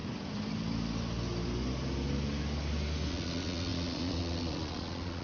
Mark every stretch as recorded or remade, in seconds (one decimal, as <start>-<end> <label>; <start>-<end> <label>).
0.0-3.1 recorded; 3.1-5.2 remade